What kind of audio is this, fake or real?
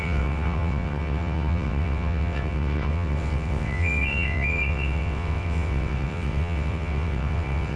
fake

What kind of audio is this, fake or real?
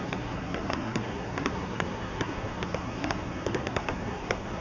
fake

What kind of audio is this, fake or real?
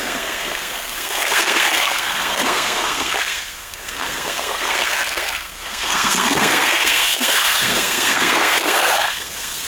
fake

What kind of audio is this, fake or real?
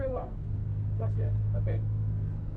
fake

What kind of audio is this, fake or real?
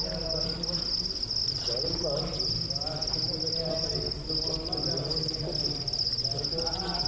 real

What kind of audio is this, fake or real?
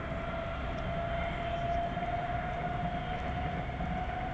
real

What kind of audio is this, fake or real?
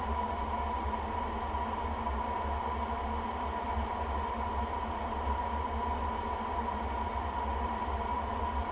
real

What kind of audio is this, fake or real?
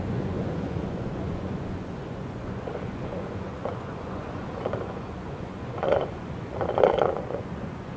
fake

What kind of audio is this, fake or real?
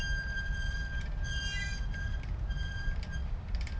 fake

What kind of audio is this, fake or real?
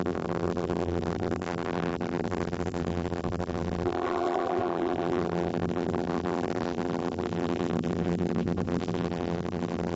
fake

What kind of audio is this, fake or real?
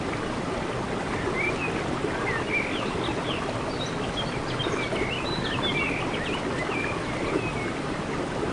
real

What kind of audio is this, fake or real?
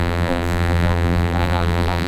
fake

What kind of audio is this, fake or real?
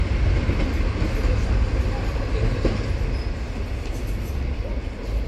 real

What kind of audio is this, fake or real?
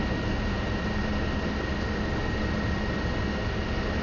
real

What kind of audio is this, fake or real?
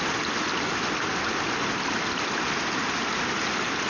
real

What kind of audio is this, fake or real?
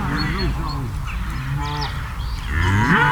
real